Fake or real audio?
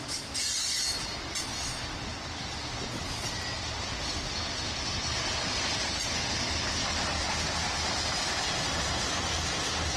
real